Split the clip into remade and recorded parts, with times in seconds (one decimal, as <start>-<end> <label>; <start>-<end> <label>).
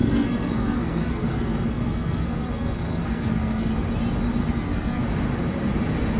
0.0-3.7 remade; 3.7-4.4 recorded; 4.4-5.0 remade; 5.0-6.2 recorded